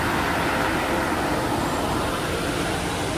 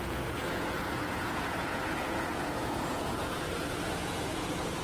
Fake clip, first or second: second